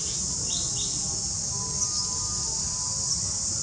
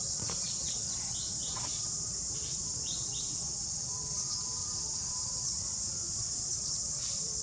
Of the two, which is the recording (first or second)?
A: first